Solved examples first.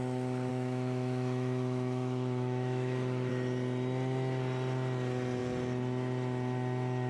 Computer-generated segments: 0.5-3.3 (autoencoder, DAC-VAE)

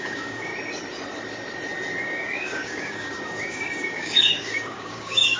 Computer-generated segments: 0.0-0.5 (codec, DAC); 2.0-5.4

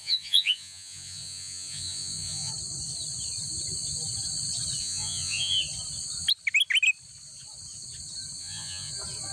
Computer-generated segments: 0.0-2.5 (vocoder, Vocos); 4.8-5.6; 8.4-8.9

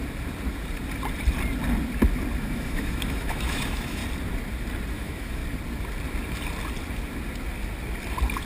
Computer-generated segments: 2.4-4.0 (autoencoder, DAC-VAE); 4.9-5.4